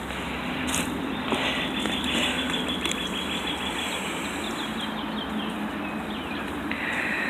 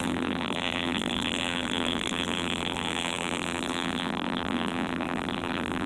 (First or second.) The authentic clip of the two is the first